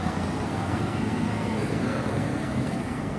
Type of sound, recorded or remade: remade